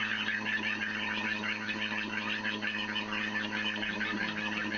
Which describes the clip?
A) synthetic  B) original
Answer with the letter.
B